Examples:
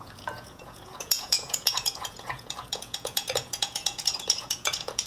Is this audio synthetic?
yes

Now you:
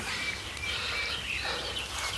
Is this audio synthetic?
no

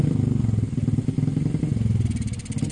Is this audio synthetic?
no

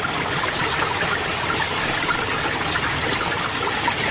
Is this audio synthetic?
no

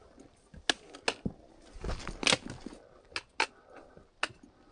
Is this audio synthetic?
no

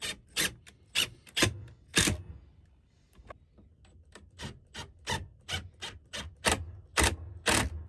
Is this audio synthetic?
no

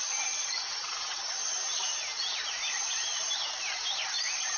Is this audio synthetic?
yes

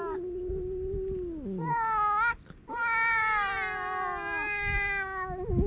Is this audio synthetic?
no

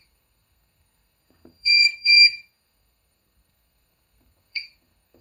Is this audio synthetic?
yes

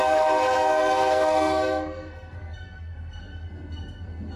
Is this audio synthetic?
yes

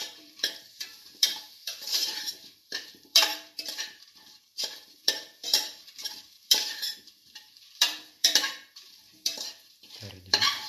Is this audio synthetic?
yes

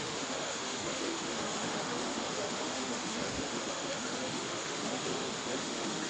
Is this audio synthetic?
yes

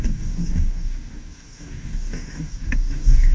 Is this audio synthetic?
yes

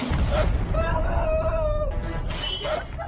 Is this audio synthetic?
no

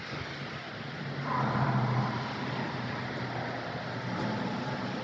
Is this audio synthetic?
no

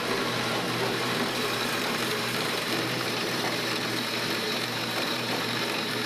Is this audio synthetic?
yes